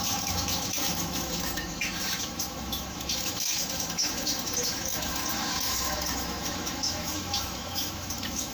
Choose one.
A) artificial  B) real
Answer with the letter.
A